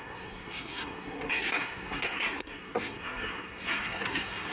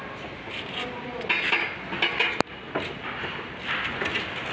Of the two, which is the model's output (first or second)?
first